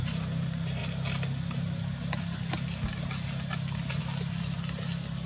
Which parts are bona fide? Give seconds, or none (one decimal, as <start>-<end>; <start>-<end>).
0.0-5.3